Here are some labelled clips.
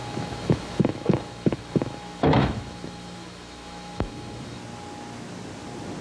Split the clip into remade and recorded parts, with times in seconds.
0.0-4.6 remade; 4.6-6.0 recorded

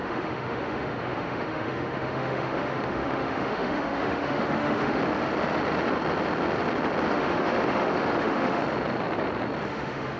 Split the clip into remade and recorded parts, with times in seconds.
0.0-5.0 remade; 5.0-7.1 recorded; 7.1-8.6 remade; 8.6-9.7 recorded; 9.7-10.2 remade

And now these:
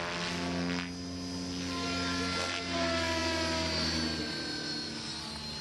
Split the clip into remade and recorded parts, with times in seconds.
0.0-5.6 recorded